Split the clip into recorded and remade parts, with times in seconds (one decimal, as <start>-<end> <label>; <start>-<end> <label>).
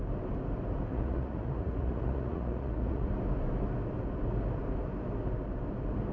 0.0-0.9 recorded; 0.9-3.1 remade; 3.1-6.1 recorded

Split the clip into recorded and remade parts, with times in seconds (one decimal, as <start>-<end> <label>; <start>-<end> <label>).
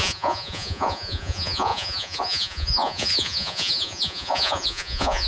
0.0-5.3 remade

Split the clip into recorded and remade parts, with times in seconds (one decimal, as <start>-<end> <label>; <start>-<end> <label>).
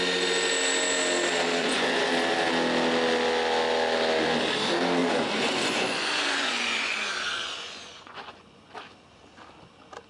0.0-1.6 recorded; 1.6-2.1 remade; 2.1-5.0 recorded; 5.0-8.7 remade; 8.7-10.1 recorded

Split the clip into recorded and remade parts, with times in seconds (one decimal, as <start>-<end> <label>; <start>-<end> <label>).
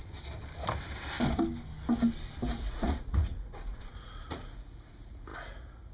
0.0-2.6 recorded; 2.6-5.9 remade